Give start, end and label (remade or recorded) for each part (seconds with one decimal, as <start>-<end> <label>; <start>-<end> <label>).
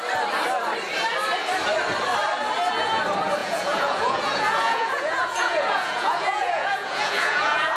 0.0-3.4 recorded; 3.4-7.8 remade